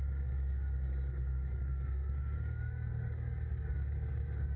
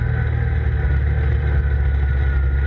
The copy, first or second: first